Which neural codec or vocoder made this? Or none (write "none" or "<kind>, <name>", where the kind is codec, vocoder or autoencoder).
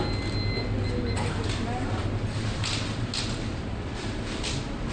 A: none